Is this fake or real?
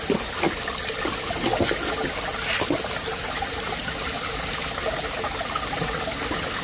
real